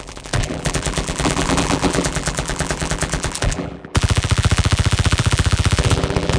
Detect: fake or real fake